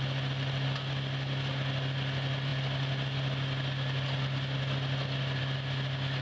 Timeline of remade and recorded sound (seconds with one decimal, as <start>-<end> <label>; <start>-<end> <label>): 0.0-6.2 recorded